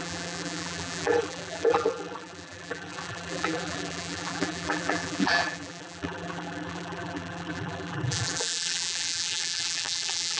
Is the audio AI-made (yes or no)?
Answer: yes